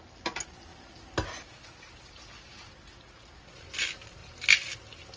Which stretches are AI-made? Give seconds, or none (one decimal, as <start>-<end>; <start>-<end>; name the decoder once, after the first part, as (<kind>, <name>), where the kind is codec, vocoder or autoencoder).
none